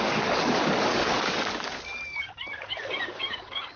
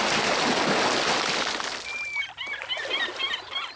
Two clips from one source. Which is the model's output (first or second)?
first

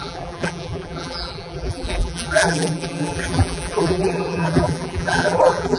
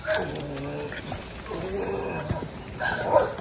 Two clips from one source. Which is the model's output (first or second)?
first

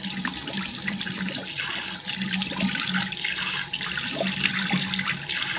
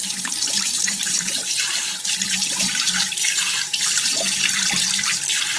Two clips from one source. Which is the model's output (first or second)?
second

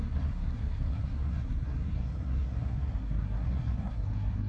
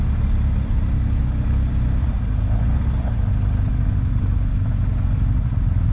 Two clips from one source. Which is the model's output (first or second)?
first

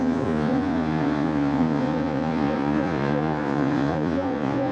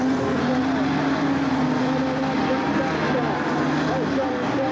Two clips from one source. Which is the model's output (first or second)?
first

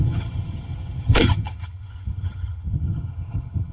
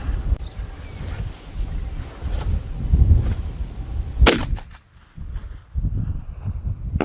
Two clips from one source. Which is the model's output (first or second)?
first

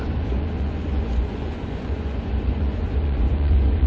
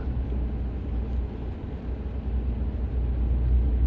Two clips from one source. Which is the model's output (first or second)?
first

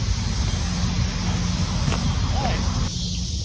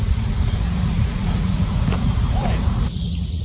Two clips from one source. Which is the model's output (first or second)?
second